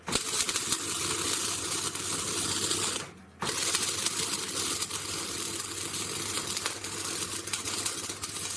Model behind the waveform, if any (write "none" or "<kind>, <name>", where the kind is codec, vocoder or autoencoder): none